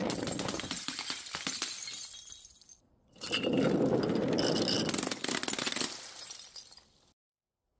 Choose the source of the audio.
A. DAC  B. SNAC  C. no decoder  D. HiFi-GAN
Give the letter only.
C